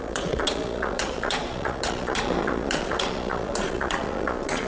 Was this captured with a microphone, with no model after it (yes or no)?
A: no